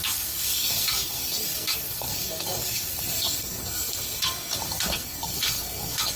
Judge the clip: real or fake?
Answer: fake